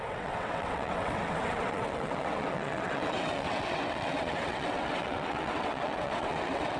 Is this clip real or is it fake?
fake